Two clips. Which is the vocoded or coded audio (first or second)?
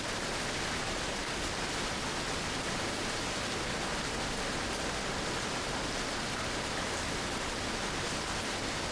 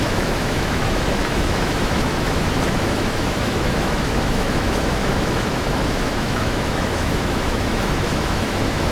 second